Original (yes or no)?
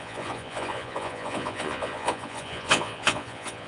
no